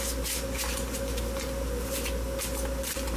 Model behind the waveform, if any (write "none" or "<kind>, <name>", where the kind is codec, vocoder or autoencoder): none